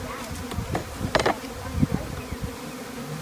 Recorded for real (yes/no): yes